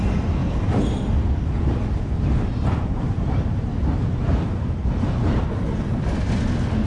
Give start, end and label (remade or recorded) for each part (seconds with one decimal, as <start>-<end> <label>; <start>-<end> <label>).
0.0-6.9 recorded